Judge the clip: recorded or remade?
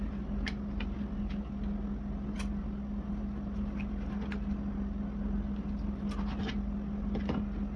recorded